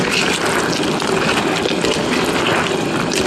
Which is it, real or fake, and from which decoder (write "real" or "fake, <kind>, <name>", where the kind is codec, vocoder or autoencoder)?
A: real